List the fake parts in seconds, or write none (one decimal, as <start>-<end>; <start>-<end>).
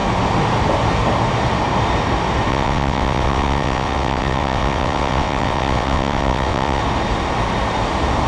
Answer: 2.5-6.8